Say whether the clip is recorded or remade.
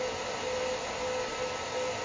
recorded